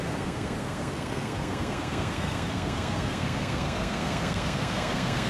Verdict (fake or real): fake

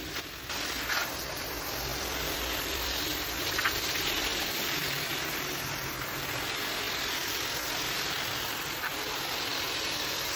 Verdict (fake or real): fake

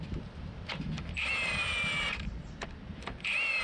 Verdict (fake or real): fake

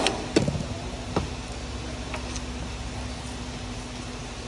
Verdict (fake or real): real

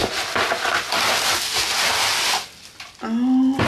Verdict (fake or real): real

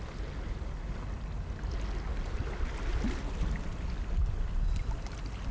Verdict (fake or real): real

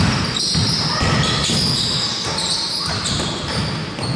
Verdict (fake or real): real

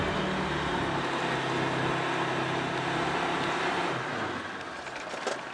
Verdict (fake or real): real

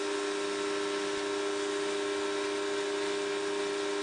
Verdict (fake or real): real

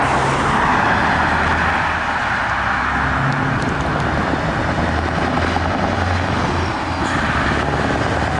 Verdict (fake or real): real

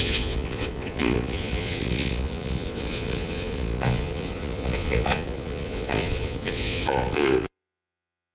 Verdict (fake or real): fake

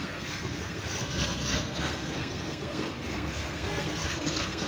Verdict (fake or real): fake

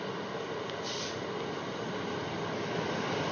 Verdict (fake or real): real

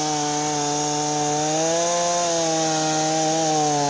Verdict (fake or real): real